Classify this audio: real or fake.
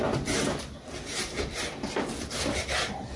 real